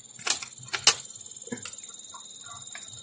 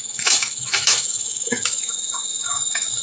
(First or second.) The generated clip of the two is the second